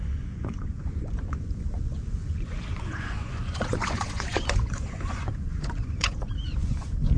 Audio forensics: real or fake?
fake